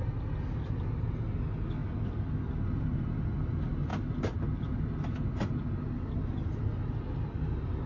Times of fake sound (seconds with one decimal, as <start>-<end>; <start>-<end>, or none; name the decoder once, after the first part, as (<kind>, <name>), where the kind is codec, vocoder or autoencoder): none